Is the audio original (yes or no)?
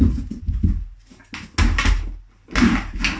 yes